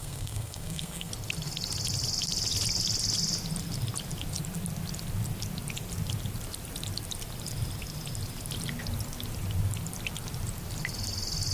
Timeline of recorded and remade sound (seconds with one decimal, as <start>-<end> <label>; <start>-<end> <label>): 0.0-1.1 remade; 1.1-11.5 recorded